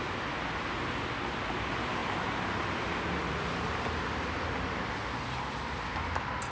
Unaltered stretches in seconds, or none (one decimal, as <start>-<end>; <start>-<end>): 0.0-6.5